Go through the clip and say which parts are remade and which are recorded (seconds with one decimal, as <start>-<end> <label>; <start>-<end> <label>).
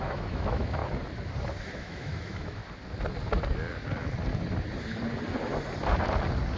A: 0.0-0.8 remade; 0.8-1.6 recorded; 1.6-2.6 remade; 2.6-6.6 recorded